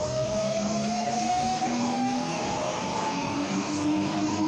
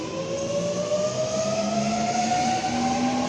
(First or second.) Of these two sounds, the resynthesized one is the first